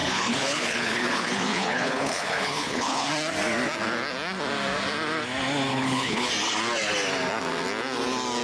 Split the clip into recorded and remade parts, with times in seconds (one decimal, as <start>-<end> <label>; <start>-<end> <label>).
0.0-3.1 remade; 3.1-5.7 recorded; 5.7-6.3 remade; 6.3-8.4 recorded